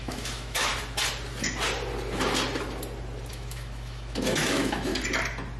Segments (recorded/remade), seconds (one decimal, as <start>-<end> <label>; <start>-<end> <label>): 0.0-0.7 remade; 0.7-3.3 recorded; 3.3-4.9 remade; 4.9-5.6 recorded